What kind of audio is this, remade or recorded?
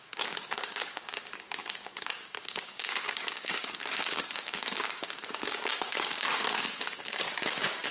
remade